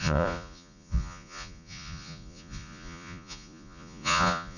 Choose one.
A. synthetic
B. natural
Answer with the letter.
A